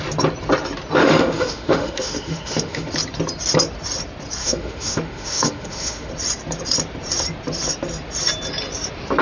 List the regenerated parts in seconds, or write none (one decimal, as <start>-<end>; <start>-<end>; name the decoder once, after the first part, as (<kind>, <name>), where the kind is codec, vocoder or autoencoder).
1.0-2.9 (autoencoder, DAC-VAE); 4.4-6.1